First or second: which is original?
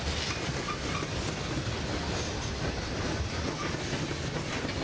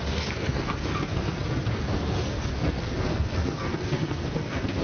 first